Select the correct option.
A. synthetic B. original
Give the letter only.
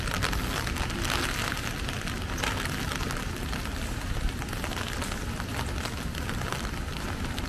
B